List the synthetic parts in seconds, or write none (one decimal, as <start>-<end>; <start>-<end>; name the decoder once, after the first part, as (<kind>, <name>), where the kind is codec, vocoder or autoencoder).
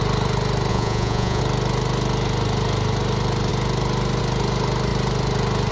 0.7-1.4 (vocoder, Vocos)